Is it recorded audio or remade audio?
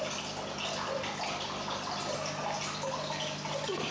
recorded